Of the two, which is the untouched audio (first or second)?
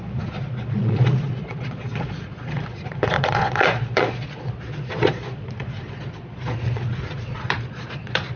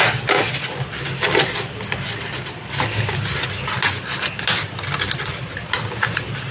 second